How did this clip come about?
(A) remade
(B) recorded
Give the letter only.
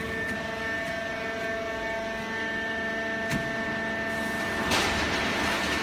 B